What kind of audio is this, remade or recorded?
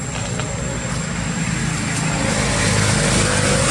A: recorded